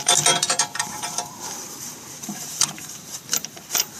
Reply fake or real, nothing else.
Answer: fake